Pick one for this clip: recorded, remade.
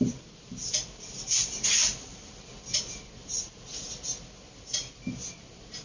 recorded